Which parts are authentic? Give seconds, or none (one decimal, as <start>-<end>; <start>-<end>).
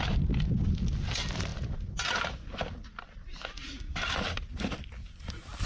0.0-5.7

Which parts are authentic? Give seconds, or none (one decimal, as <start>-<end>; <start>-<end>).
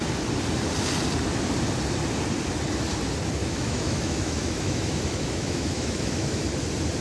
0.0-3.4; 6.4-7.0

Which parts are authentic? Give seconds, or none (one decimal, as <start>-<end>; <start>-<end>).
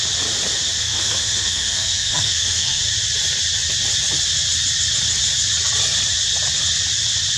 0.0-0.8; 2.8-7.4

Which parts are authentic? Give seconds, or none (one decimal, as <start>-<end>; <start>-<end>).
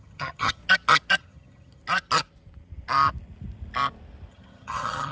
0.6-1.2; 1.8-4.3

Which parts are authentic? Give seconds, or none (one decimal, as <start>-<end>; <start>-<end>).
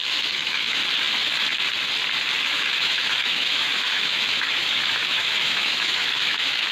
0.8-2.4